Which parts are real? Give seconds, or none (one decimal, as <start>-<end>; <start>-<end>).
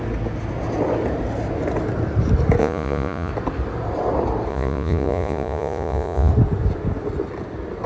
0.0-2.6; 3.3-4.5; 6.3-7.9